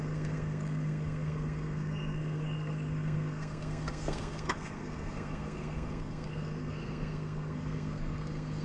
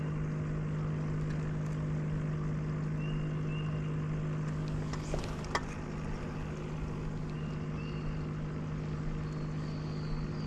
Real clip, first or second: second